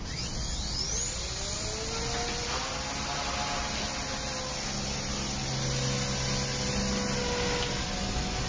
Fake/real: real